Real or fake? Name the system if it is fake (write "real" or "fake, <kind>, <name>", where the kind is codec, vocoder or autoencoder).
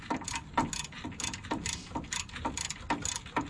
real